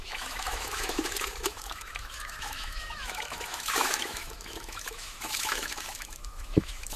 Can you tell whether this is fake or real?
fake